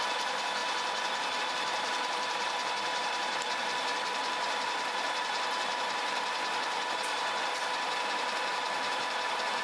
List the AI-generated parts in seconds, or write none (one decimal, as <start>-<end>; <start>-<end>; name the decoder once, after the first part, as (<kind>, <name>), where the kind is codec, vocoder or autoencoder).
0.0-0.6 (vocoder, BigVGAN v2); 1.4-9.6